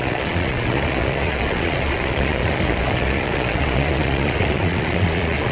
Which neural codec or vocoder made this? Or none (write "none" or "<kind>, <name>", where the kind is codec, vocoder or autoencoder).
vocoder, Vocos